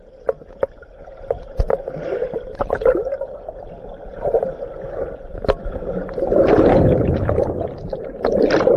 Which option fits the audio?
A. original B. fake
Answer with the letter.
A